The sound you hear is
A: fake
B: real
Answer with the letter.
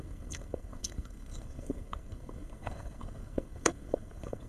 A